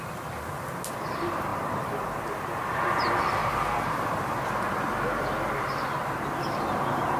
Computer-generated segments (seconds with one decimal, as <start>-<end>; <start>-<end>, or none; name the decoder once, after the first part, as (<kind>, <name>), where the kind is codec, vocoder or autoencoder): 3.4-4.6 (vocoder, BigVGAN v2)